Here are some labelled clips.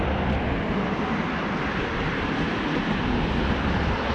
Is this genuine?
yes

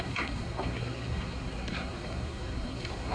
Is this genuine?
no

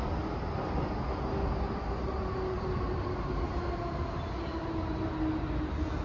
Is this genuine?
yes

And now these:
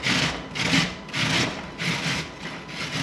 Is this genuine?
yes